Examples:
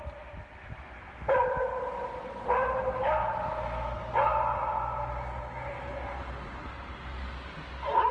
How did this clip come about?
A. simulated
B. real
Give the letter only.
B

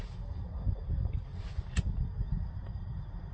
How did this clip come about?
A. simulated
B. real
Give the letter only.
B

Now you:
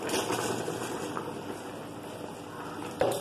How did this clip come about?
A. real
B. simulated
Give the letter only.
A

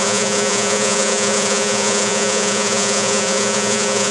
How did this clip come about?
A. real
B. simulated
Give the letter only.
B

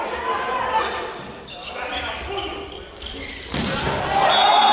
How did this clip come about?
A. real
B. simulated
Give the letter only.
A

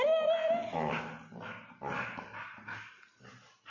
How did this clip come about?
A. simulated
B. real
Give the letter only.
B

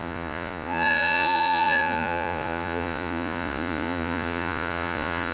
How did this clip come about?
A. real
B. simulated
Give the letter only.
B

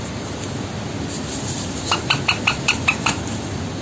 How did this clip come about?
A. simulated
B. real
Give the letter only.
B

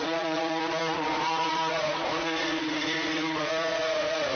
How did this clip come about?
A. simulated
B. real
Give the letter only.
A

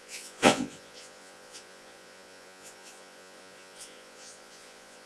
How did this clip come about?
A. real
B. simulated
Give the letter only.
B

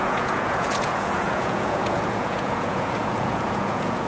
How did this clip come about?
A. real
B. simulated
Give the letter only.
B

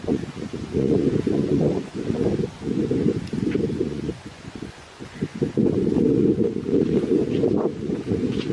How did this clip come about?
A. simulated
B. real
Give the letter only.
A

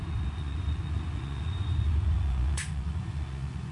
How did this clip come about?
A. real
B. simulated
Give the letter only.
B